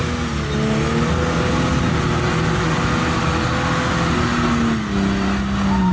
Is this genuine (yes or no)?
yes